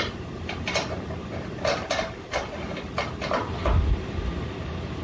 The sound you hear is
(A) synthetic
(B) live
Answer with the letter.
B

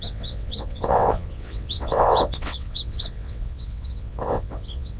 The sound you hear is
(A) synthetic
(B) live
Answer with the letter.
A